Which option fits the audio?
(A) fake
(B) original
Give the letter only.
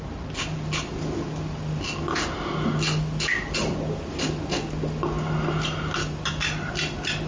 B